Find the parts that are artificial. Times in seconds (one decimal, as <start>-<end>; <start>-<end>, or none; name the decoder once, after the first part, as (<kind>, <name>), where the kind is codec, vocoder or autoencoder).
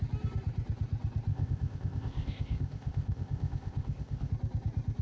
1.3-4.3 (codec, ZipCodec)